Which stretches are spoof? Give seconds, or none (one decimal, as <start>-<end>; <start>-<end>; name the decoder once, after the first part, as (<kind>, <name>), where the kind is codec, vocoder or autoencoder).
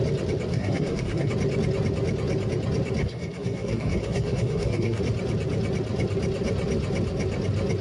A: 0.5-1.3 (codec, SNAC); 3.0-5.0